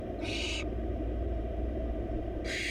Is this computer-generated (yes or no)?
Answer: yes